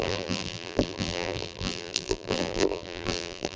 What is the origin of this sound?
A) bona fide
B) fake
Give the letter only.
B